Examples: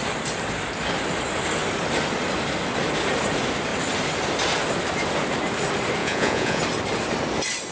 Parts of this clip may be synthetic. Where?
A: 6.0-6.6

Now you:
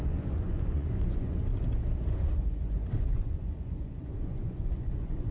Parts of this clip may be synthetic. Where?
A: 0.0-1.5; 2.1-5.3

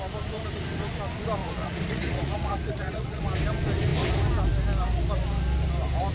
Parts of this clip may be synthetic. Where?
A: 1.4-3.2

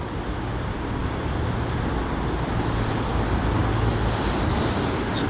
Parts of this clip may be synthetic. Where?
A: none

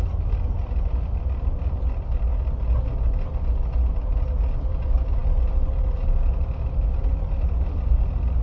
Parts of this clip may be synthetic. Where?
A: none

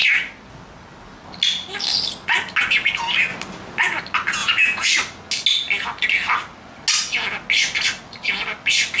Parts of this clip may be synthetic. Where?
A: 4.4-4.9

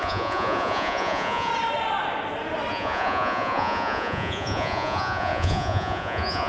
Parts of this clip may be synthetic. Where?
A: 0.0-1.5; 2.7-6.5

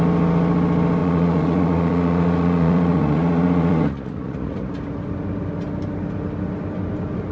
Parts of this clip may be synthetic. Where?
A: 1.0-4.7